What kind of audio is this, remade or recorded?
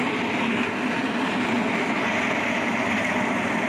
recorded